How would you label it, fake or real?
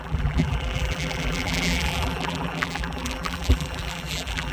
fake